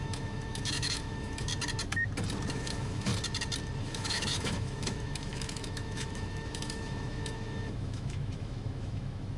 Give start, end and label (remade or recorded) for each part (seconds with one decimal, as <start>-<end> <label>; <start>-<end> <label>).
0.0-1.5 remade; 1.5-2.5 recorded; 2.5-3.1 remade; 3.1-3.8 recorded; 3.8-9.4 remade